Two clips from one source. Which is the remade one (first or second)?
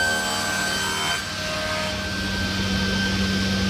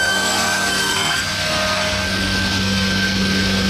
second